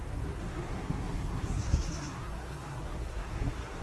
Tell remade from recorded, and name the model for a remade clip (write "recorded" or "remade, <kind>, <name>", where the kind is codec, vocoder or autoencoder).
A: remade, codec, SNAC